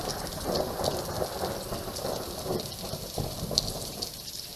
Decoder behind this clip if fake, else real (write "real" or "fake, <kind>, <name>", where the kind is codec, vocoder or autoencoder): real